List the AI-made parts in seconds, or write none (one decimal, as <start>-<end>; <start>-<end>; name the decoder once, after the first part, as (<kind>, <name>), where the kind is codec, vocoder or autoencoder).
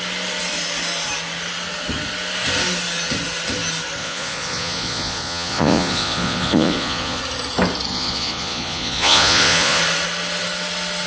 4.0-7.2 (vocoder, Vocos); 7.9-9.8